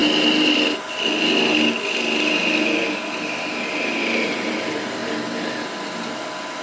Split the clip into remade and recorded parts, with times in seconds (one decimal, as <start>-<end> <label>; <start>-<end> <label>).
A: 0.0-4.0 recorded; 4.0-5.0 remade; 5.0-6.6 recorded